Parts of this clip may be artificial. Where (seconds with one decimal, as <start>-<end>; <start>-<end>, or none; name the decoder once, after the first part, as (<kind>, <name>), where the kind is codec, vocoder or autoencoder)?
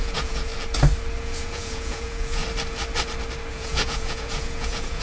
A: 0.0-0.5 (vocoder, Vocos); 1.2-2.4; 3.5-5.0